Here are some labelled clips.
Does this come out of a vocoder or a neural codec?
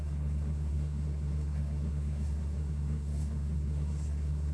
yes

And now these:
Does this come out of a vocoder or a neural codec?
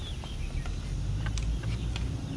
no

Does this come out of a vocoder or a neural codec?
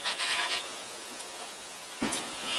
yes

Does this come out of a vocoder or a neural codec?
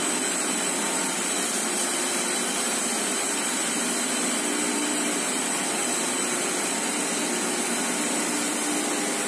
no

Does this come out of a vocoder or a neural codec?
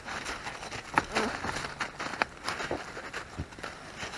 no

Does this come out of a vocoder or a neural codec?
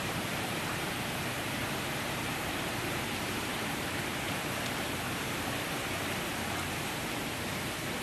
yes